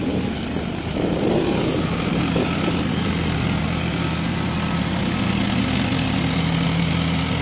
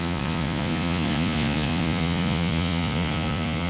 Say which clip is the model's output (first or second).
second